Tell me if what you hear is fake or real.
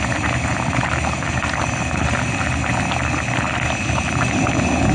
real